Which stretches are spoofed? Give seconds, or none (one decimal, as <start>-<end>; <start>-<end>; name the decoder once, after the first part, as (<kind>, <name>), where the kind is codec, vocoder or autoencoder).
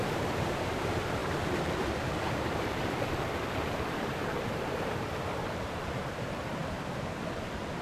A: 0.0-7.8 (vocoder, BigVGAN v2)